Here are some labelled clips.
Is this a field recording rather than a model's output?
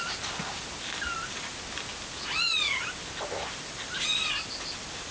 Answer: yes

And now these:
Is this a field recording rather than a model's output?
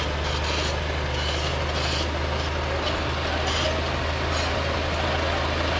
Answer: yes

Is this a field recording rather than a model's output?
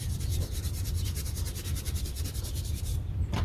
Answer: yes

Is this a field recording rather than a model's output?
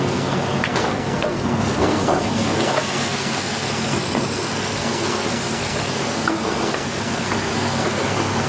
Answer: no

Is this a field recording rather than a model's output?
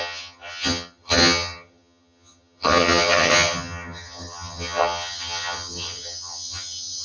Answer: no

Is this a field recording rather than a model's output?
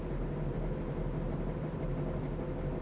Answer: yes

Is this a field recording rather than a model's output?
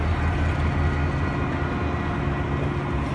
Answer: yes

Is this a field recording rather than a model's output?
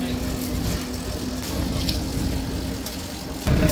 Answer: yes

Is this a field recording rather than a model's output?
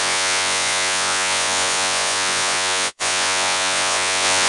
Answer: no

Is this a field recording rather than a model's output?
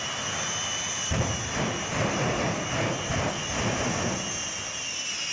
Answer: yes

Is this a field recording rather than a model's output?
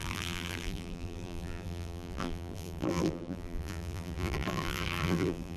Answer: no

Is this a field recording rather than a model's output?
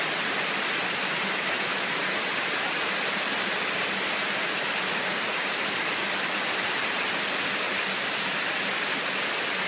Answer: yes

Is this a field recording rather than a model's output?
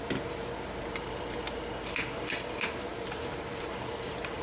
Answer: yes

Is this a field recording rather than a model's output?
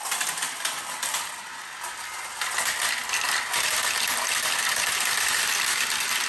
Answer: yes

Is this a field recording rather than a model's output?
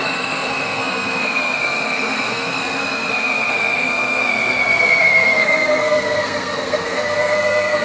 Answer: no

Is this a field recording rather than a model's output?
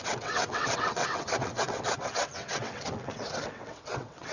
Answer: no